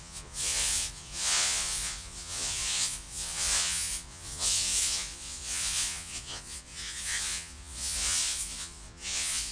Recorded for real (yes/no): no